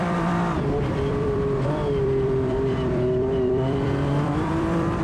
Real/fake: fake